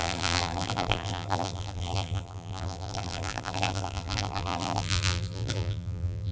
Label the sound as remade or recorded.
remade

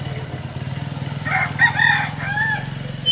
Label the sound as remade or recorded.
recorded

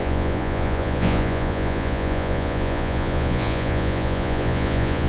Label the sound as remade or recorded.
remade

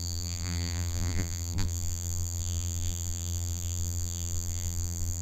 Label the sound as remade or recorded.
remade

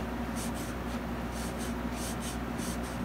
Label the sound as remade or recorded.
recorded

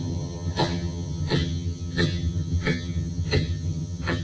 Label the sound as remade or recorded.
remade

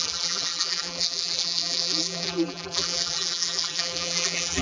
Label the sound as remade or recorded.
remade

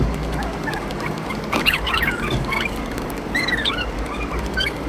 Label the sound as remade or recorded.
remade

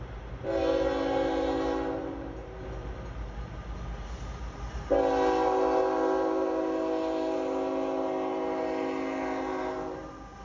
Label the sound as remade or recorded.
recorded